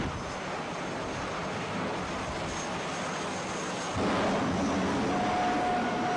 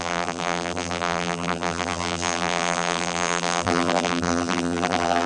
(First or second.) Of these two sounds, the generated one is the second